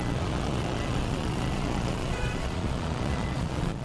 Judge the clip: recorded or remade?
remade